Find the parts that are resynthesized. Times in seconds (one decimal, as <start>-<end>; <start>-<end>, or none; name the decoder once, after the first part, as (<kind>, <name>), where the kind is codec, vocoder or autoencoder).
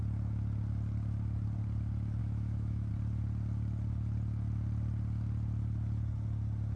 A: 2.2-2.9 (autoencoder, DAC-VAE)